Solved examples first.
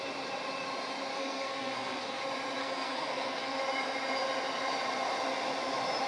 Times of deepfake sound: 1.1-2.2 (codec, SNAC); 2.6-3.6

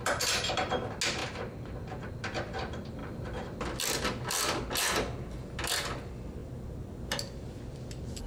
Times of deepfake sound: 6.4-7.6 (vocoder, BigVGAN v2)